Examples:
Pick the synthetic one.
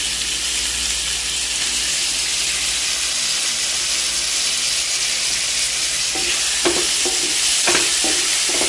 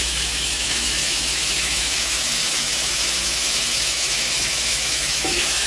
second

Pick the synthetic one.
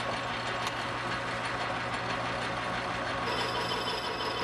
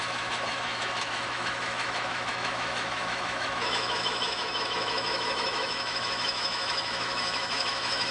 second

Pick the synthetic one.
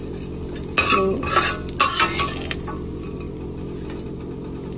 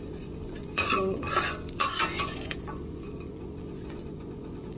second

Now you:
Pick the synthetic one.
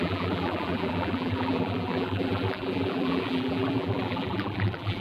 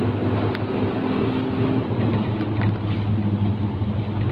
first